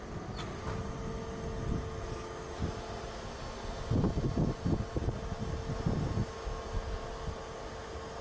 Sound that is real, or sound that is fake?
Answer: real